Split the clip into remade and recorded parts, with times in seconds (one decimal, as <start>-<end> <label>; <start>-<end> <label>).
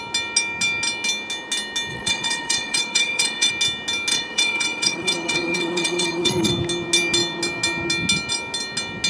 0.0-1.9 recorded; 1.9-3.5 remade; 3.5-4.1 recorded; 4.1-6.5 remade; 6.5-9.1 recorded